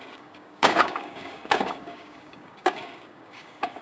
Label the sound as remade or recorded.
remade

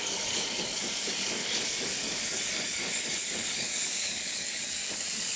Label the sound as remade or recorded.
remade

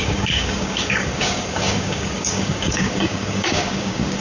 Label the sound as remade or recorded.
remade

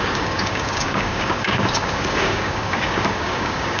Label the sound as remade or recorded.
remade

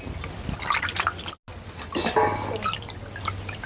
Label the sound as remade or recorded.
recorded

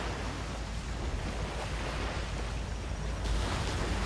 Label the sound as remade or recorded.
recorded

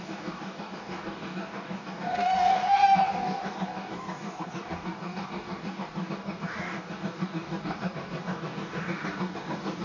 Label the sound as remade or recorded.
remade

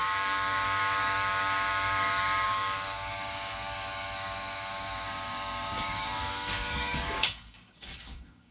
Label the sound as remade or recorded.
remade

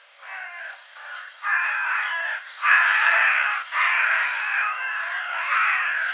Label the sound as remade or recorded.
remade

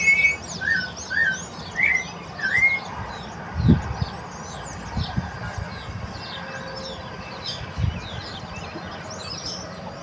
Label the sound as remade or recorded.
recorded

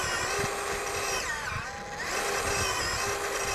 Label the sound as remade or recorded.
recorded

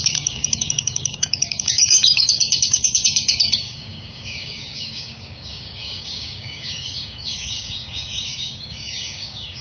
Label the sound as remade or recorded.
remade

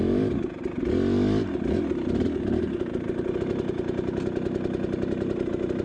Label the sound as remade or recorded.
recorded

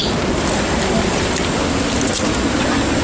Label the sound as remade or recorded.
recorded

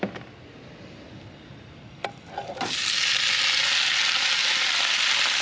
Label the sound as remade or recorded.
recorded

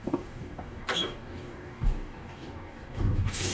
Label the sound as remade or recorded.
remade